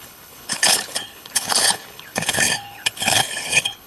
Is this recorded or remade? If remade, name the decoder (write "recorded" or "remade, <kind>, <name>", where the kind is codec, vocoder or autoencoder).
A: remade, codec, HILCodec